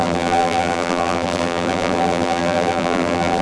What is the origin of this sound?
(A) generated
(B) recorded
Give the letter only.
A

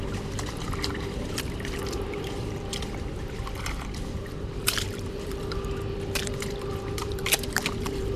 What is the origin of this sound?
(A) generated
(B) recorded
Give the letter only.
A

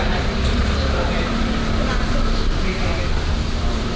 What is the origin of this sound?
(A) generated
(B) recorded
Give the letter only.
A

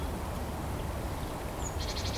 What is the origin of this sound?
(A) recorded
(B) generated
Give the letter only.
A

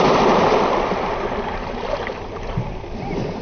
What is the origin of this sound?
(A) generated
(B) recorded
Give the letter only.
B